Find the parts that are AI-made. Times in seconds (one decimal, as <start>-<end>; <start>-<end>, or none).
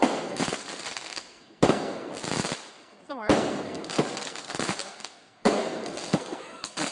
0.0-2.1; 2.7-6.9